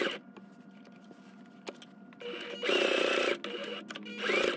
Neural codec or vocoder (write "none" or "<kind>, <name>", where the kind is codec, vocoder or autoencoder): none